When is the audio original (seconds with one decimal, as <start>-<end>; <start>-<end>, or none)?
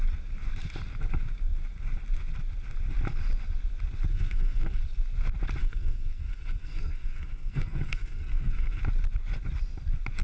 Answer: 0.0-4.1; 4.8-5.6; 8.8-10.2